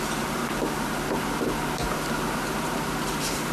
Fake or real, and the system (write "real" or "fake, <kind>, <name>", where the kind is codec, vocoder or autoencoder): fake, vocoder, BigVGAN v2